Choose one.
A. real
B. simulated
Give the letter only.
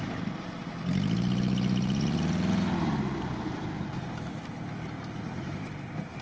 A